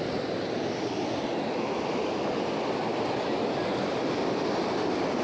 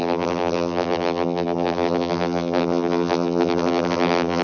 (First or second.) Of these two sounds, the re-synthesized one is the second